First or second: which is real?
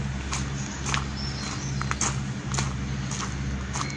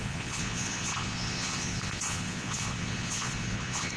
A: first